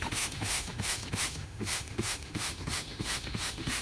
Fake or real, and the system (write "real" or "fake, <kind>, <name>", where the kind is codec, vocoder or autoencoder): fake, autoencoder, DAC-VAE